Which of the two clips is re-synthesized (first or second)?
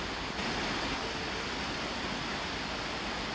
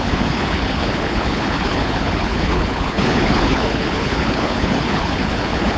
second